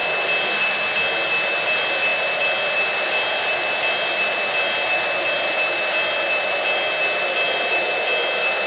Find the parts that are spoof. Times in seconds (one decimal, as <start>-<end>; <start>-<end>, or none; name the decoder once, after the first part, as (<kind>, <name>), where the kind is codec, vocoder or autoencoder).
none